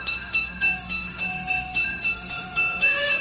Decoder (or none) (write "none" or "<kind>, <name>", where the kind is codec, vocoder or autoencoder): autoencoder, DAC-VAE